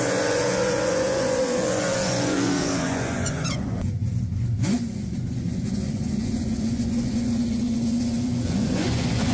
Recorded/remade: remade